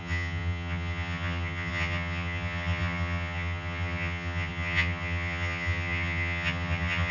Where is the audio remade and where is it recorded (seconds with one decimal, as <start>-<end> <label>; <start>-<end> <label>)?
0.0-7.1 remade